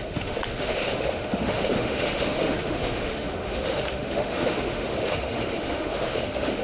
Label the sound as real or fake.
fake